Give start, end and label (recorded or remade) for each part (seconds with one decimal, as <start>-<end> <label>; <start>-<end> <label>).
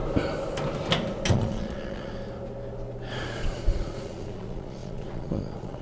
0.0-1.3 recorded; 1.3-2.1 remade; 2.1-3.1 recorded; 3.1-5.8 remade